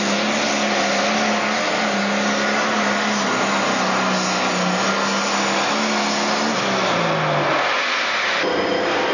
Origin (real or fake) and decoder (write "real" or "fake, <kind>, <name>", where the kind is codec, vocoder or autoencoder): real